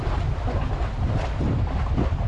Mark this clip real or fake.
real